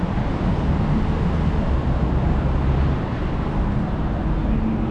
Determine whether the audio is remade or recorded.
recorded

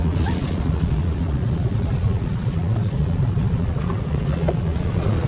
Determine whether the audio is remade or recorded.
remade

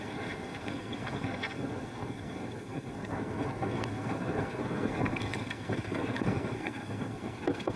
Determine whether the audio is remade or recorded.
remade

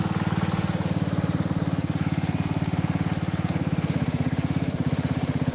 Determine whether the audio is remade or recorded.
recorded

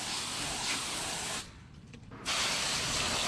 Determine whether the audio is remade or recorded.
recorded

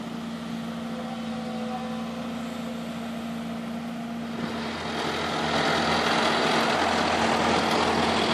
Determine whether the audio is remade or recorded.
recorded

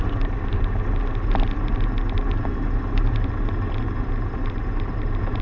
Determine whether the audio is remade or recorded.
recorded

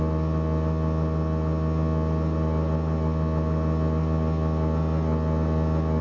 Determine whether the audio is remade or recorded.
recorded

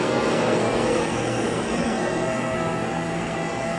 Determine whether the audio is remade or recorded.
remade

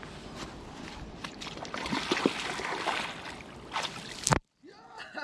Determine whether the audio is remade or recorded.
recorded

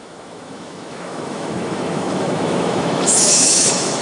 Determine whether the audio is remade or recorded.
remade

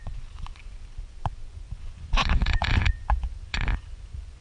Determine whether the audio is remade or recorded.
remade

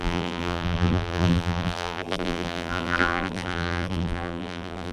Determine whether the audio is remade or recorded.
remade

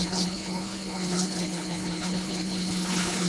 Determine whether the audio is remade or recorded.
remade